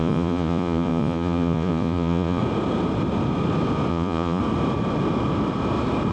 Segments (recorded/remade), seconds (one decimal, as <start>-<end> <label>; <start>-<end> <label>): 0.0-2.4 remade; 2.4-3.9 recorded; 3.9-4.4 remade; 4.4-6.1 recorded